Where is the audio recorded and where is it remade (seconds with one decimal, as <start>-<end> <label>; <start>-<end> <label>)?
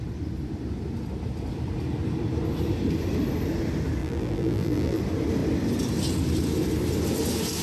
0.0-4.0 recorded; 4.0-5.0 remade; 5.0-7.6 recorded